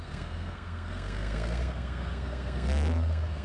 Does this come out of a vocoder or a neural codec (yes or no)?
yes